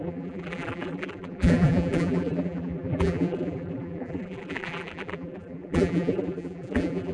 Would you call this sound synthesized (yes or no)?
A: yes